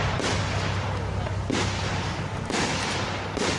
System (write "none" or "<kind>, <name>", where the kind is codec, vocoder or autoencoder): none